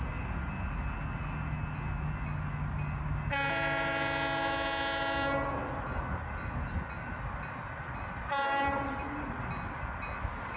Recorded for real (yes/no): yes